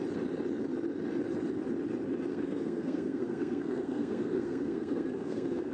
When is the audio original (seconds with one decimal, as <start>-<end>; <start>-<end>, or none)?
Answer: 0.0-2.3